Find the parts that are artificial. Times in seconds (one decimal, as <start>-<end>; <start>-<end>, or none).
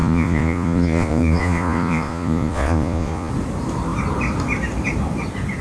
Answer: 0.0-3.3